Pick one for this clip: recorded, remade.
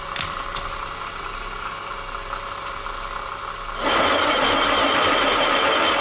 recorded